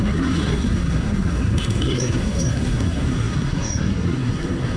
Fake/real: fake